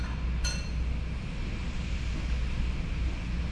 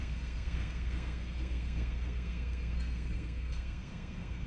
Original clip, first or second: first